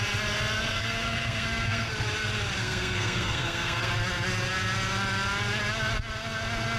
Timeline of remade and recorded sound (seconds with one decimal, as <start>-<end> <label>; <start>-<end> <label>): 0.0-0.7 recorded; 0.7-1.9 remade; 1.9-2.6 recorded; 2.6-3.9 remade; 3.9-6.8 recorded